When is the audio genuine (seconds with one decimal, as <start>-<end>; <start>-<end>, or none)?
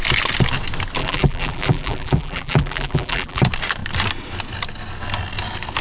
0.0-1.0; 3.4-5.8